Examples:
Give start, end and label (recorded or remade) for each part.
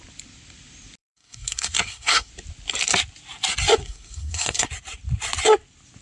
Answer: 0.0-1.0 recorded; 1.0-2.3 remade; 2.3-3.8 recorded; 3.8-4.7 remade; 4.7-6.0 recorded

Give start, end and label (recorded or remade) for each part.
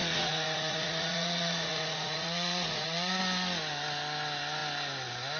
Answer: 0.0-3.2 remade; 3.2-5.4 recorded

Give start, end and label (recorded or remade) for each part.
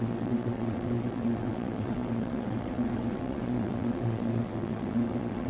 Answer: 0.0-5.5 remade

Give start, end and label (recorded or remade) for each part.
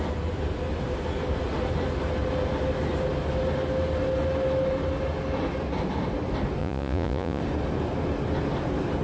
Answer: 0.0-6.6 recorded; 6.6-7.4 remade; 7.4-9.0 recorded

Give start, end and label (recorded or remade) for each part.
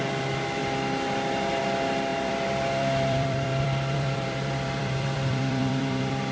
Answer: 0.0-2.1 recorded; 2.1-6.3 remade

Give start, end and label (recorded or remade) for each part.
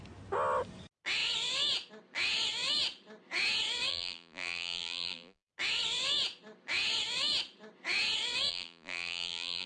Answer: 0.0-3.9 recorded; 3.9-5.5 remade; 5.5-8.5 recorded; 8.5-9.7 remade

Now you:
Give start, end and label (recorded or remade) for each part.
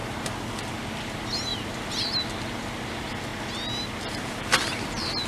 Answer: 0.0-0.6 recorded; 0.6-3.3 remade; 3.3-4.0 recorded; 4.0-5.3 remade